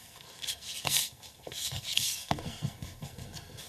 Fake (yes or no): yes